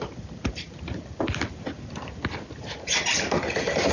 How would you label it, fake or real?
real